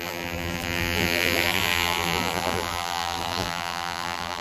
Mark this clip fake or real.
fake